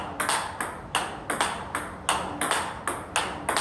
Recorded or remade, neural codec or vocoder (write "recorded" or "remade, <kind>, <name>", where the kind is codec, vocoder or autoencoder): recorded